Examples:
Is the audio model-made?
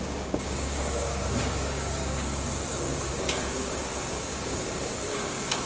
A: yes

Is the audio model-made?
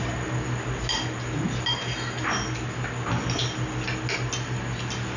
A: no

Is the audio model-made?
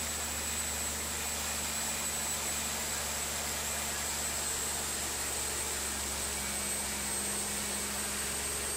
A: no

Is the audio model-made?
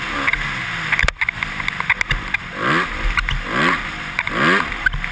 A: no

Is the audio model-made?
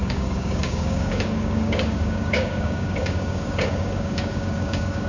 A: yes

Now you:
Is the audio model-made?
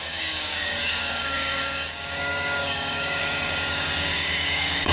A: yes